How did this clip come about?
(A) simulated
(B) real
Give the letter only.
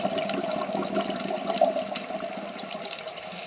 B